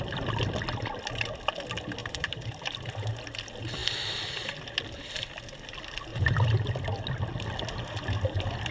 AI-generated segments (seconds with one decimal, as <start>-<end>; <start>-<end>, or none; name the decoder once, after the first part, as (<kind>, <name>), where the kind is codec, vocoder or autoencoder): 2.0-3.1 (vocoder, BigVGAN v2); 6.1-6.7